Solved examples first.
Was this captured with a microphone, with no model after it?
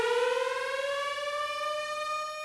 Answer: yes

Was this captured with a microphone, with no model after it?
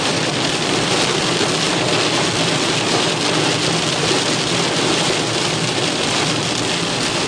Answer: yes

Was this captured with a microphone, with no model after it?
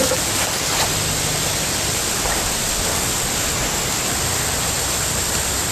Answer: yes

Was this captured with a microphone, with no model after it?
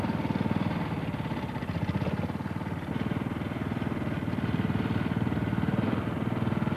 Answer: yes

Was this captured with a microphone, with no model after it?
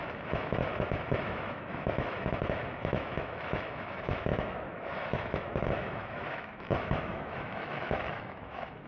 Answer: no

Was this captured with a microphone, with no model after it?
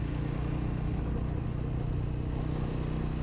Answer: yes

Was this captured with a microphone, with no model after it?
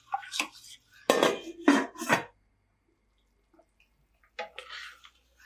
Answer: yes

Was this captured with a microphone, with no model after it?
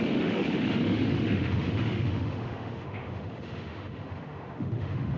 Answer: no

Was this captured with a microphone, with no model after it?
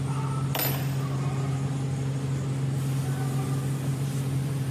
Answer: yes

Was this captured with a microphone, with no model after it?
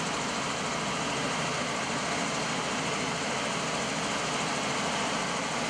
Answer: yes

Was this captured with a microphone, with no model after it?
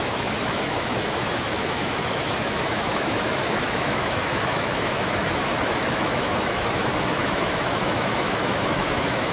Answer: no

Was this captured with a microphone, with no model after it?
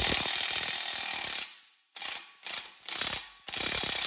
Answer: yes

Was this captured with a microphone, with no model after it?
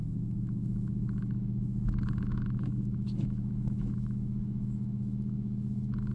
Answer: no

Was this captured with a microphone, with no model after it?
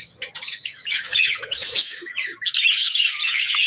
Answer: no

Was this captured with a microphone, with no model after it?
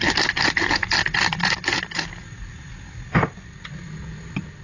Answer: yes